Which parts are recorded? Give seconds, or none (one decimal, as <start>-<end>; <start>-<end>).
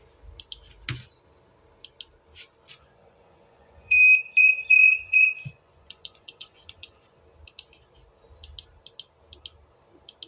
0.0-2.7; 4.0-4.4; 7.2-10.3